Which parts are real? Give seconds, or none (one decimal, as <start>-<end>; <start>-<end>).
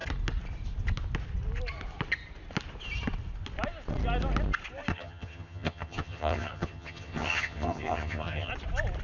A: 0.0-4.9; 8.5-9.0